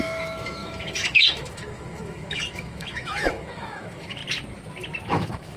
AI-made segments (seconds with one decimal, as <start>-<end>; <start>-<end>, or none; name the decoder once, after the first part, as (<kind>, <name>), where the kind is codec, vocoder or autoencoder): 0.0-4.2 (autoencoder, DAC-VAE); 5.1-5.6